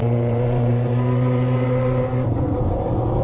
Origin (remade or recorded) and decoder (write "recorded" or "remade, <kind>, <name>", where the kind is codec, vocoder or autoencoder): remade, vocoder, BigVGAN v2